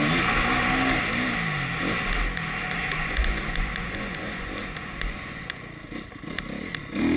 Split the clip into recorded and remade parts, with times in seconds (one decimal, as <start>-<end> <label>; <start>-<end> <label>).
0.0-2.8 recorded; 2.8-5.6 remade; 5.6-7.2 recorded